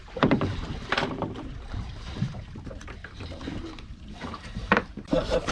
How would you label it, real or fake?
fake